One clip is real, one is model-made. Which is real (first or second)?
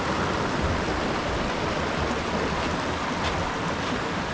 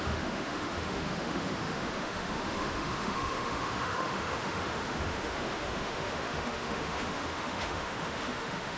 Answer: first